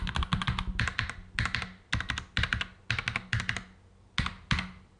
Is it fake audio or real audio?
real